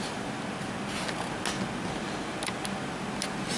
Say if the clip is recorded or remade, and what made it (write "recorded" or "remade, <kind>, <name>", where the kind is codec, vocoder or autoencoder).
recorded